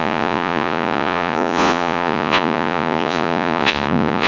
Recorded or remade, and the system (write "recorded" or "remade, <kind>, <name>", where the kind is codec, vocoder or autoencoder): remade, vocoder, Vocos